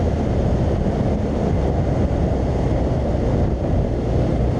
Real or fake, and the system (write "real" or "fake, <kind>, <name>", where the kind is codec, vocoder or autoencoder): real